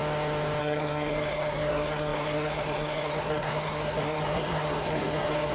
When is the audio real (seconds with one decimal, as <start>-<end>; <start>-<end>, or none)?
0.0-0.6